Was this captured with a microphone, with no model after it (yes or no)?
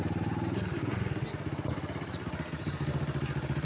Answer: yes